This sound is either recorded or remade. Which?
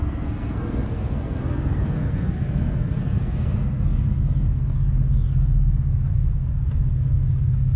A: remade